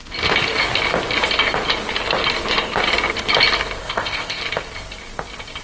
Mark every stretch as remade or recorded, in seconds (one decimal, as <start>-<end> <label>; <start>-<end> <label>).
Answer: 0.0-3.8 recorded; 3.8-4.4 remade; 4.4-5.6 recorded